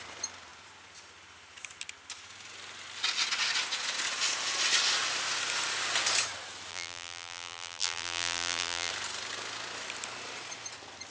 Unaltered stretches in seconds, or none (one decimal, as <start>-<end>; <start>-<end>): 0.0-6.7; 8.9-11.1

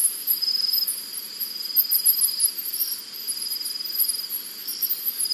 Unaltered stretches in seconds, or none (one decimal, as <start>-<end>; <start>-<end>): 1.1-4.3

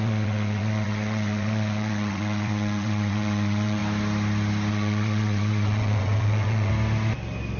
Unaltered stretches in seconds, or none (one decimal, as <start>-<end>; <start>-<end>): 3.8-4.7; 6.7-7.6